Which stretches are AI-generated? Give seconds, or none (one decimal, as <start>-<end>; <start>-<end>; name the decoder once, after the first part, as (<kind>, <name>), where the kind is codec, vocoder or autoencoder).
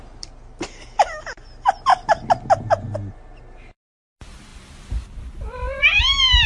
none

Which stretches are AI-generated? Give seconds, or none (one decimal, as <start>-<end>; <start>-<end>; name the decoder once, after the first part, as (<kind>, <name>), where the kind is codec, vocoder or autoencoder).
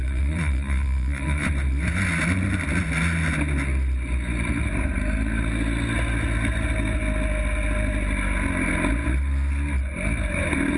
0.0-1.5 (vocoder, Vocos)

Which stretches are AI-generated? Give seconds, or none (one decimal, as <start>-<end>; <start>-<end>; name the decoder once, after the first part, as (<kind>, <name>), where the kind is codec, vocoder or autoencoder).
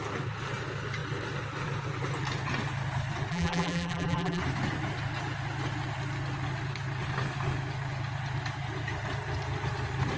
3.3-4.4 (vocoder, BigVGAN v2)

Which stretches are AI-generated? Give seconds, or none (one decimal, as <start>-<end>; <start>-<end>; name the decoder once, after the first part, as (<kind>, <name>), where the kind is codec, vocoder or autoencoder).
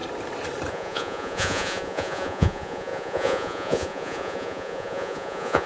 0.7-5.7 (vocoder, Vocos)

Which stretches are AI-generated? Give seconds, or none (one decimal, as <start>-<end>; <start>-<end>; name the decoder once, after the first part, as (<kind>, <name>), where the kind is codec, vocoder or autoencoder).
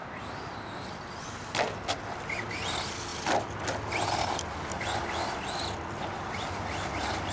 none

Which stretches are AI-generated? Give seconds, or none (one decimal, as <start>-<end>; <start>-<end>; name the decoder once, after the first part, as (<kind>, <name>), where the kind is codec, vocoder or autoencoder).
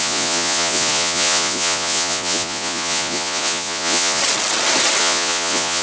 0.0-4.2 (vocoder, Vocos); 5.0-5.8